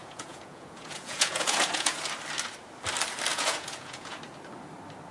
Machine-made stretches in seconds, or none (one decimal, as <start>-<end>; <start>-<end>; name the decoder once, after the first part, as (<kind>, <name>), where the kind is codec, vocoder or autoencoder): 0.0-2.0 (vocoder, Vocos); 3.3-4.2